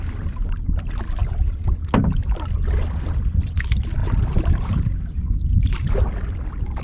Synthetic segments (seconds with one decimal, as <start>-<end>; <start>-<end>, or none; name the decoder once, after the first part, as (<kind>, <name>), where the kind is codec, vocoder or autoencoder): 1.2-1.9 (vocoder, BigVGAN v2); 4.0-6.1